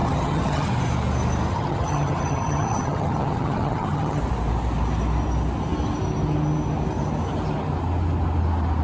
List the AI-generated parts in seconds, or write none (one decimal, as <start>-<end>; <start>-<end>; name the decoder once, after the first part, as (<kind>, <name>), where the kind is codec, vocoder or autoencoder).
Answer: 0.0-0.7 (vocoder, HiFi-GAN); 1.5-4.2